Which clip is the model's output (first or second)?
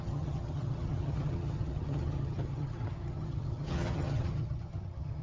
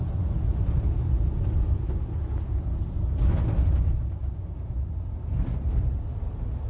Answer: first